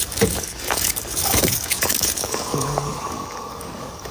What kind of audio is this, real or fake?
fake